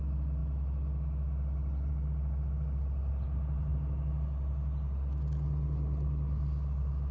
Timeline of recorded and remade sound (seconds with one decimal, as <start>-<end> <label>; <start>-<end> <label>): 0.0-7.1 recorded